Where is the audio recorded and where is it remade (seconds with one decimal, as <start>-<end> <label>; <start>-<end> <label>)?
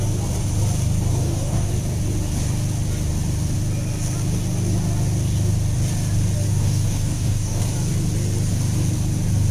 0.0-1.1 recorded; 1.1-1.7 remade; 1.7-6.5 recorded; 6.5-7.6 remade; 7.6-9.5 recorded